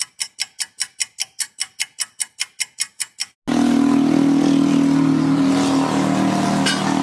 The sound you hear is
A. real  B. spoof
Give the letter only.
A